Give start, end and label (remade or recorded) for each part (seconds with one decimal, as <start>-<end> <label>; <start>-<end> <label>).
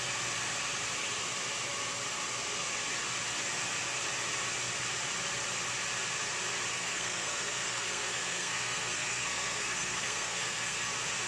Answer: 0.0-6.7 recorded; 6.7-10.9 remade; 10.9-11.3 recorded